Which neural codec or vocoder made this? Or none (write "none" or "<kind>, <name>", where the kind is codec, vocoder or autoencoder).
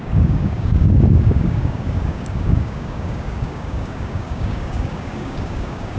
codec, DAC